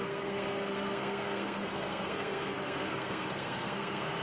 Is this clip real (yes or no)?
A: no